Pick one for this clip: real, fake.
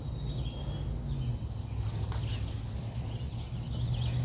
real